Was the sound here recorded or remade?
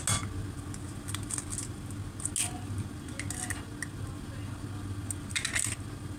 recorded